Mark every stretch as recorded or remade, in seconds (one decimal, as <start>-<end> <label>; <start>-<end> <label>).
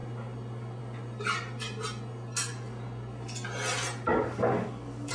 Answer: 0.0-4.1 recorded; 4.1-5.1 remade